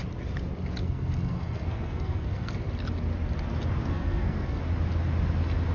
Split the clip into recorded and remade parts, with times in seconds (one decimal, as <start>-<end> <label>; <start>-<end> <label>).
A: 0.0-0.8 recorded; 0.8-2.5 remade; 2.5-3.8 recorded; 3.8-4.6 remade; 4.6-5.7 recorded